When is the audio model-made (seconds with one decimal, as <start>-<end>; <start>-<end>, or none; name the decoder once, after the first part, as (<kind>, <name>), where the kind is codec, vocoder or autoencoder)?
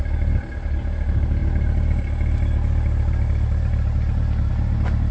none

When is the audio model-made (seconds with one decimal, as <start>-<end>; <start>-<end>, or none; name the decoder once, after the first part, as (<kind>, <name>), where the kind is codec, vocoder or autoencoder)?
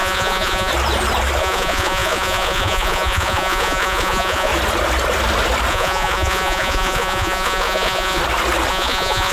0.0-0.7 (vocoder, Vocos); 1.4-4.5; 5.7-8.2; 8.7-9.3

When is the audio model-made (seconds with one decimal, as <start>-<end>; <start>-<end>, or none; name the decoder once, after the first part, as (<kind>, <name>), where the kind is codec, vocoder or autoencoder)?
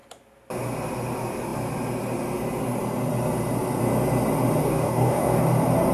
4.6-5.4 (codec, DAC)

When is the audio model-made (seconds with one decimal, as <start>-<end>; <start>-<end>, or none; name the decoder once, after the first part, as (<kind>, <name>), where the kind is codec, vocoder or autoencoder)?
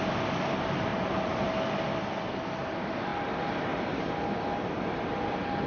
0.0-3.1 (vocoder, BigVGAN v2); 3.7-5.7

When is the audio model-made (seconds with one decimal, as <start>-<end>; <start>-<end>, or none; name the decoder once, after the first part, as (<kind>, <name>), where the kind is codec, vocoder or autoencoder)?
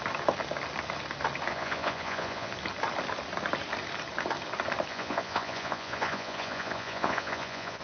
1.5-2.5 (vocoder, Vocos); 4.9-7.8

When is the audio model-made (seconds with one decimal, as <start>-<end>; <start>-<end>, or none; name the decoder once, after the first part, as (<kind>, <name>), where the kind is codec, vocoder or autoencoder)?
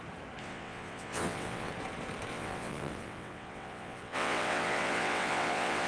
0.4-1.7 (vocoder, WaveNeXt); 2.3-5.9